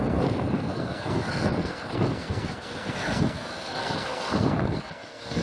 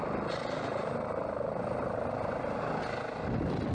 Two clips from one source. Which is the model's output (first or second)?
first